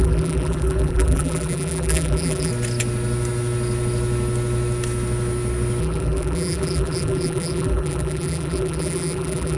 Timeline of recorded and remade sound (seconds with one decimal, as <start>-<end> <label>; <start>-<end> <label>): 0.0-2.5 remade; 2.5-5.8 recorded; 5.8-9.6 remade